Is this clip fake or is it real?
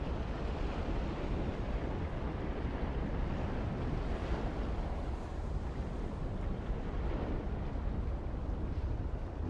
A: fake